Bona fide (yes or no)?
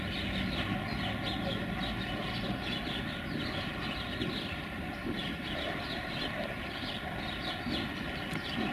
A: yes